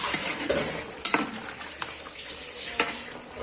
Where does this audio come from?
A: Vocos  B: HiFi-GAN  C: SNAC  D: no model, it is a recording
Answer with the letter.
D